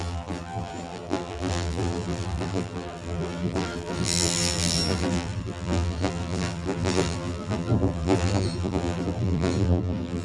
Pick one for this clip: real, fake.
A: fake